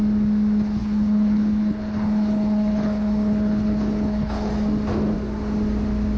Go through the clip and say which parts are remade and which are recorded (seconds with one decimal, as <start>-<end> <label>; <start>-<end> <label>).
0.0-0.8 recorded; 0.8-4.5 remade; 4.5-6.2 recorded